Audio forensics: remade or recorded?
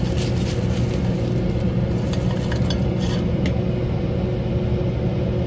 recorded